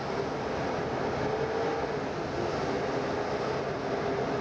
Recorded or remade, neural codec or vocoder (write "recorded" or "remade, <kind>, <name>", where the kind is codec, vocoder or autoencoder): recorded